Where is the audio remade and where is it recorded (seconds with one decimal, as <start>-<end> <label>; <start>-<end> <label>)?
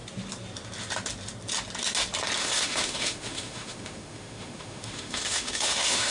0.0-2.4 recorded; 2.4-6.1 remade